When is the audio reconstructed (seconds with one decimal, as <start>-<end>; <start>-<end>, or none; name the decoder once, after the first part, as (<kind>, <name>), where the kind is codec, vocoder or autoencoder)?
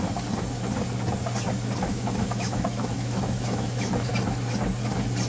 1.9-4.1 (autoencoder, DAC-VAE)